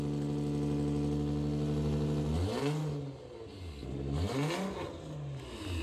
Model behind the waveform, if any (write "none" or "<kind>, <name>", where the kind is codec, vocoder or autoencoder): none